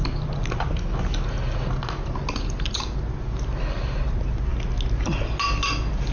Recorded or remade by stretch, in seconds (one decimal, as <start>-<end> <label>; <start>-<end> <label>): 0.0-6.1 recorded